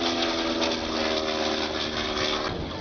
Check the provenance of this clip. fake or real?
real